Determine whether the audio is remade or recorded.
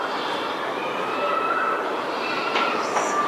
remade